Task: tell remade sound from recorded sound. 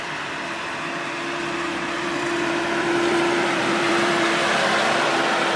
remade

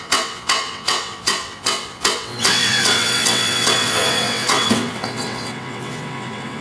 remade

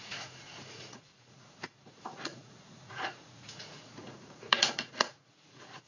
remade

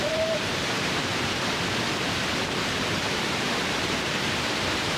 remade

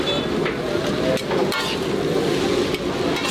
recorded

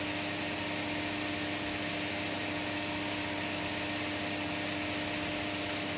recorded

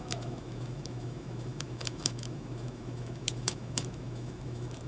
remade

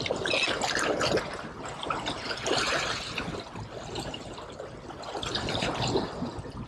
recorded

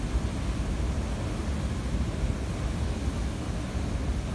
recorded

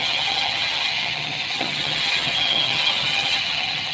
remade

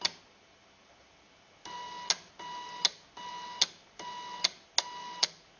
recorded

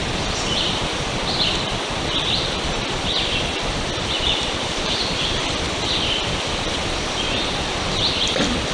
recorded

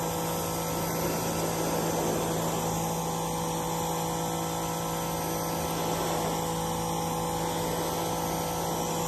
recorded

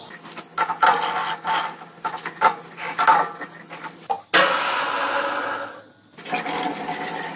recorded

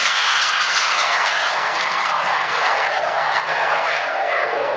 remade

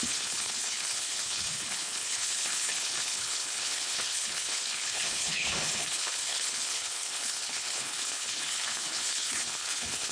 remade